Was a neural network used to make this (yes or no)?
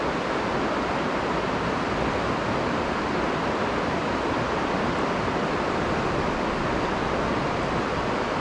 no